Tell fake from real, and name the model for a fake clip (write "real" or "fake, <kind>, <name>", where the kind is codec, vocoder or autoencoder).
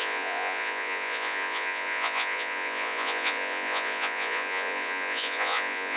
fake, vocoder, Vocos